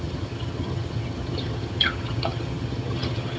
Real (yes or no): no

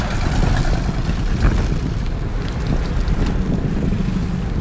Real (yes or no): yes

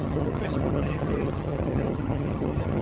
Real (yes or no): no